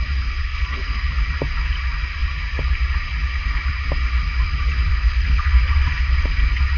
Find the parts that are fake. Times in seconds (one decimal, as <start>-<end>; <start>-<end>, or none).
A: 0.4-1.1; 4.9-5.6